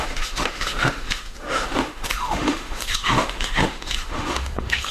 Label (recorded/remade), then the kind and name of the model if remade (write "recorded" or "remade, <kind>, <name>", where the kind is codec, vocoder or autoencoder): remade, autoencoder, DAC-VAE